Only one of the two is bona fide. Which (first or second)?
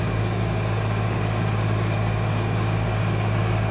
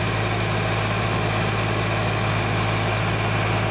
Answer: second